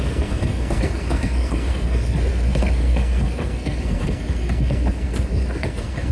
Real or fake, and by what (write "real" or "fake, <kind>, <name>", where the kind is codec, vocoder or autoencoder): fake, codec, SNAC